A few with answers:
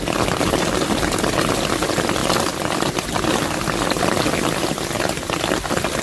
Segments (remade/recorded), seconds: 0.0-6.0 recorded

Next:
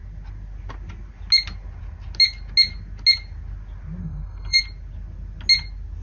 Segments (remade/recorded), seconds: 0.0-4.0 recorded; 4.0-4.6 remade; 4.6-6.0 recorded

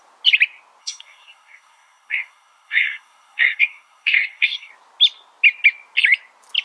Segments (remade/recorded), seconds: 0.0-0.8 recorded; 0.8-4.7 remade; 4.7-6.6 recorded

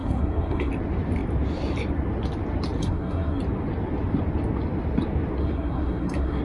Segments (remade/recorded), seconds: 0.0-0.7 remade; 0.7-2.8 recorded; 2.8-3.4 remade; 3.4-5.4 recorded; 5.4-6.4 remade

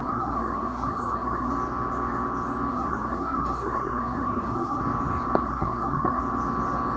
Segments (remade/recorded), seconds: 0.0-1.5 remade; 1.5-2.7 recorded; 2.7-4.8 remade; 4.8-5.4 recorded; 5.4-6.2 remade; 6.2-7.0 recorded

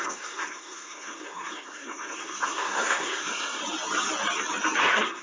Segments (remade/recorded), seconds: 0.0-3.6 remade; 3.6-4.8 recorded; 4.8-5.2 remade

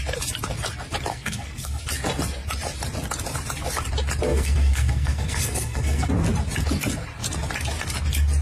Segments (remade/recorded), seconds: 0.0-1.1 recorded; 1.1-1.8 remade; 1.8-4.3 recorded; 4.3-6.1 remade; 6.1-8.4 recorded